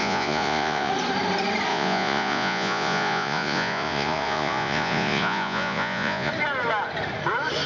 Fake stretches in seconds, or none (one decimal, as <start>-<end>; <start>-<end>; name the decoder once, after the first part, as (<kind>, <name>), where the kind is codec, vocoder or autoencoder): 0.0-0.9 (vocoder, Vocos); 1.7-6.3